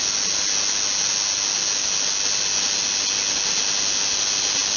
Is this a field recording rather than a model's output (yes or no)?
yes